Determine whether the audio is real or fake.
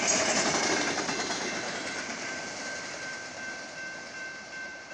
fake